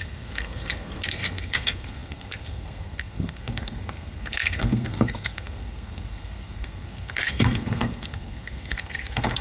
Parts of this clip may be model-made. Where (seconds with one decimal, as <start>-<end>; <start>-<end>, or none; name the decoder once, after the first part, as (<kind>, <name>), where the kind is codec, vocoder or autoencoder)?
0.0-9.4 (codec, SNAC)